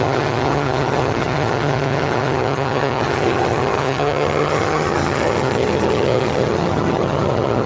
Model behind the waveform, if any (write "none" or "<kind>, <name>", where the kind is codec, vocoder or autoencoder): vocoder, HiFi-GAN